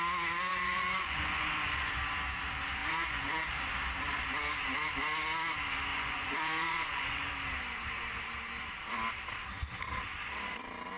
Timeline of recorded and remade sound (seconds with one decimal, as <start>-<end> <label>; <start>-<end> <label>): 0.0-0.5 recorded; 0.5-1.9 remade; 1.9-2.8 recorded; 2.8-3.4 remade; 3.4-5.9 recorded; 5.9-7.3 remade; 7.3-11.0 recorded